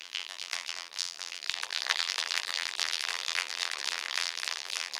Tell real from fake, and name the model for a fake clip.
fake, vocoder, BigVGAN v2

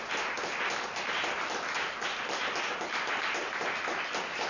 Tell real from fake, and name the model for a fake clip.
real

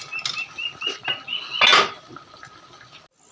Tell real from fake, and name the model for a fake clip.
real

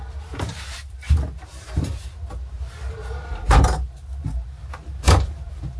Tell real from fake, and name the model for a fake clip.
fake, vocoder, BigVGAN v2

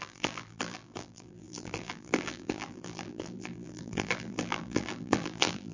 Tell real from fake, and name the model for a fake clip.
fake, vocoder, BigVGAN v2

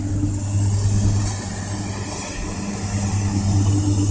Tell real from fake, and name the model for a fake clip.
real